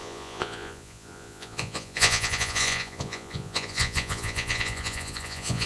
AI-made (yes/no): yes